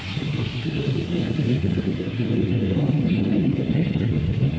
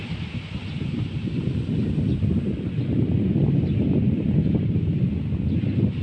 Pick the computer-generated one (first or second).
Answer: first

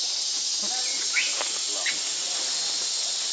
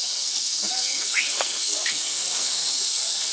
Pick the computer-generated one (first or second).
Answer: second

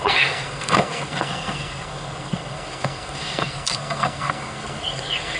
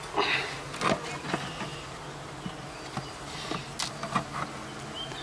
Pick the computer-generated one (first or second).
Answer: first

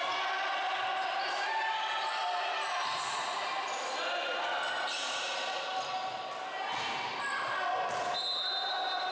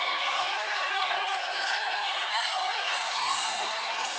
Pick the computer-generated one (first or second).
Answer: second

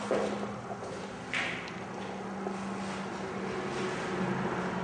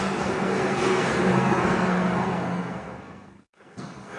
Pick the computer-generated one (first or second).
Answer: second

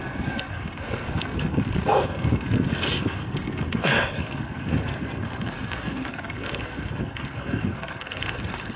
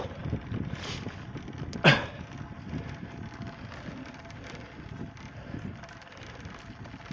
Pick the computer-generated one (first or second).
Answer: first